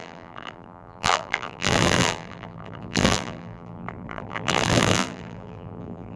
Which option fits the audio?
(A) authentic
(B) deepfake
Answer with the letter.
B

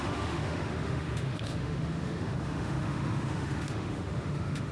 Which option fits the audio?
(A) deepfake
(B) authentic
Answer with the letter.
A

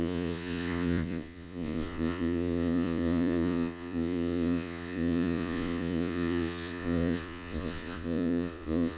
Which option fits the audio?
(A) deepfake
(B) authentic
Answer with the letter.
A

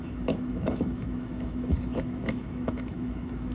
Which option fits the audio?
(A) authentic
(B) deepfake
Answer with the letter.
B